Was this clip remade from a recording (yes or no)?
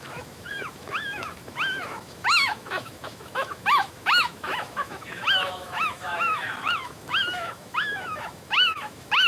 yes